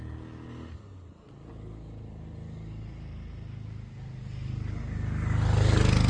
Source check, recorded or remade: recorded